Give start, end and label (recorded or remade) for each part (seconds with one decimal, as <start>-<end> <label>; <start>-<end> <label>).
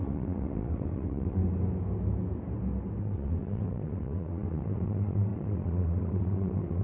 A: 0.0-1.4 remade; 1.4-3.0 recorded; 3.0-6.8 remade